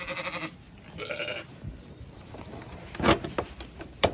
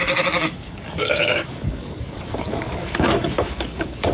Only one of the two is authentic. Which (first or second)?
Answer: first